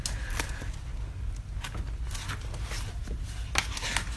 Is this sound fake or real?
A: real